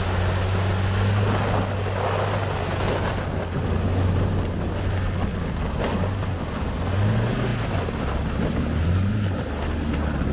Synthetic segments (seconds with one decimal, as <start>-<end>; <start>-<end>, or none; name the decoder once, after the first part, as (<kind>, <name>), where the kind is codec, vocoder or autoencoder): none